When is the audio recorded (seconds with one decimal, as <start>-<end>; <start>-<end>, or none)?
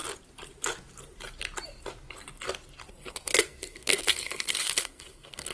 0.0-2.9